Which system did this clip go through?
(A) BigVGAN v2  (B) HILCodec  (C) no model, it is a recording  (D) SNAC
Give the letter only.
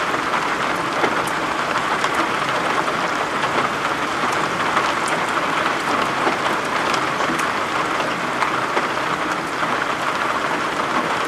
C